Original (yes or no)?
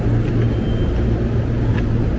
yes